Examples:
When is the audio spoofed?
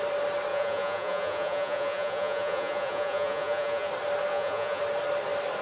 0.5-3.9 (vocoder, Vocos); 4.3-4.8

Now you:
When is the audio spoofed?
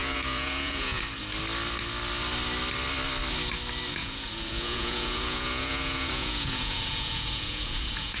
0.0-1.0 (vocoder, Vocos); 4.0-8.2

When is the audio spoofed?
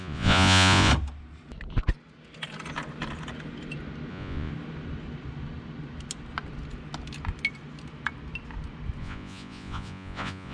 0.0-0.9 (vocoder, Vocos); 4.1-4.5; 9.0-10.5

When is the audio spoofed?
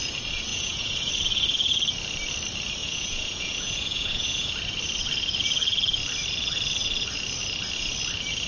0.5-1.1 (vocoder, Vocos); 2.8-4.5